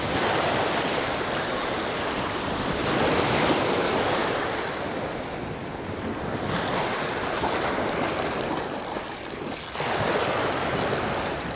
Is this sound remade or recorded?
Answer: recorded